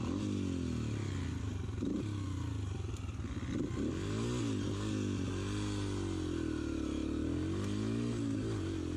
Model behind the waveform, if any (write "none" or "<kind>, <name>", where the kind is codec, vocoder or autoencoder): none